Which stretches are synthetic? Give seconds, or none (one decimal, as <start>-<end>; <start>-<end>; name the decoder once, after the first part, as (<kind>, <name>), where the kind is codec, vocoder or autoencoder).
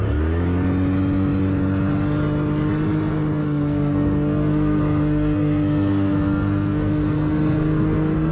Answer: 3.4-8.3 (codec, SNAC)